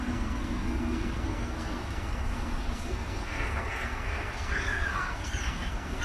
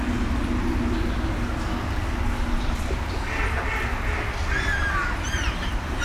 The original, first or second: second